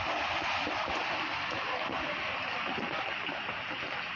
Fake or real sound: real